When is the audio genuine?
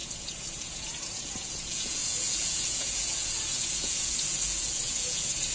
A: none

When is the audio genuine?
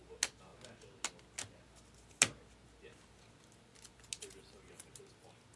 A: 0.0-5.6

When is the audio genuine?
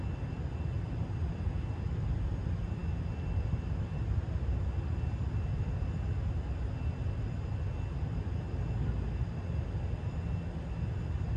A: 0.0-11.4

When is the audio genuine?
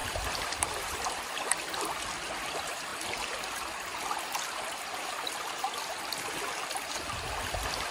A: 1.2-7.9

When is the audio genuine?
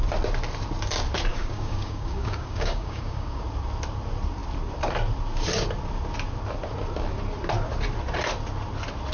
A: 0.0-1.3; 3.4-9.1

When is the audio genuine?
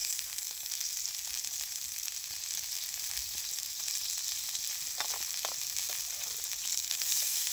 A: 0.7-6.7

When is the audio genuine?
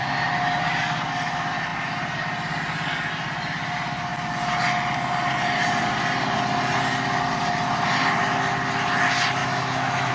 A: 0.0-9.4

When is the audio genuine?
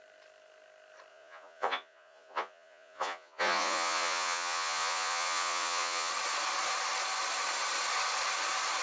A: 0.0-1.1; 6.1-8.8